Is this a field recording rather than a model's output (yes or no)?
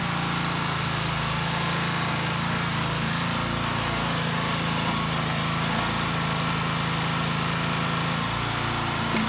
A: yes